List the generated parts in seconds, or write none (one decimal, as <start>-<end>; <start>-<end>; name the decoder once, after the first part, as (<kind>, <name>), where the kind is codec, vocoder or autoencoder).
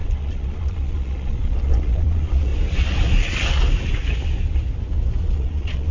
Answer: 0.0-2.5 (vocoder, Vocos); 5.2-5.9